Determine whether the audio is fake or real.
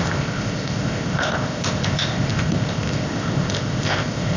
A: fake